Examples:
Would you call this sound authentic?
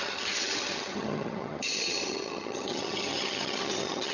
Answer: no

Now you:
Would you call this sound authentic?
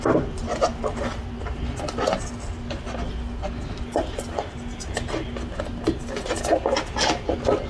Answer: yes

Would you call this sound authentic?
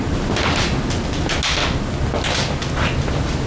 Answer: yes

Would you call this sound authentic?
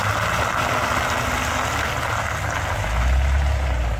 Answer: yes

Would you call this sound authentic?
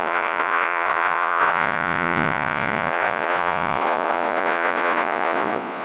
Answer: no